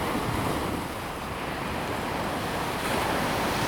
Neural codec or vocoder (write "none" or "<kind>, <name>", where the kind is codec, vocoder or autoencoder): none